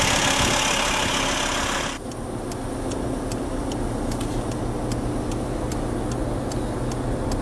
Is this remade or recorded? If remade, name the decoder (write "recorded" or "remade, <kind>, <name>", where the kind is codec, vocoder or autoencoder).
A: recorded